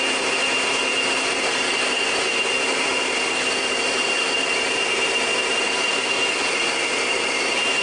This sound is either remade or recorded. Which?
recorded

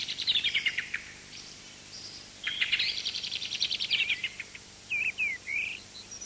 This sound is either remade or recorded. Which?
remade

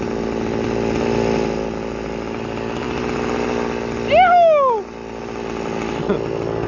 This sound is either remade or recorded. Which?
recorded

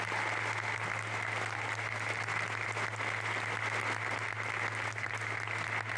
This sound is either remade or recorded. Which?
recorded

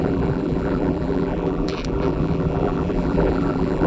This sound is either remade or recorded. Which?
remade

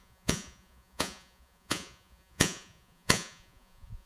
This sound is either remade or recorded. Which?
remade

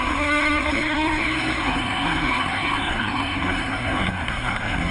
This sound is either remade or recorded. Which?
remade